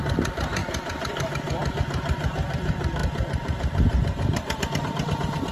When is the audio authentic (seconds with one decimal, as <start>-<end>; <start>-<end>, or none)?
0.6-1.8